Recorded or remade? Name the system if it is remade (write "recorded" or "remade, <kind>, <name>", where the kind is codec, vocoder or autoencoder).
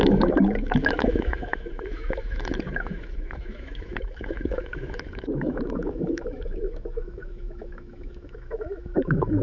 remade, autoencoder, DAC-VAE